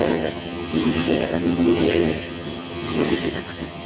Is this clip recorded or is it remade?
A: remade